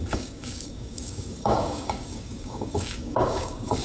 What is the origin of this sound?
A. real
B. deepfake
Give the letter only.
B